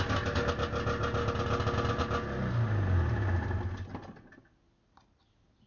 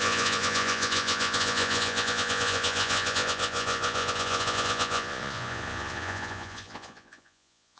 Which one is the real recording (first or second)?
first